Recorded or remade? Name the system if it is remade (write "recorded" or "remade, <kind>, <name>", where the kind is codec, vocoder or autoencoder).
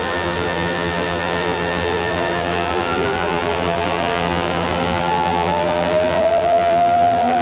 remade, vocoder, BigVGAN v2